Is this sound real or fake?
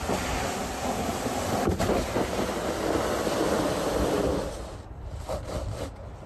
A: real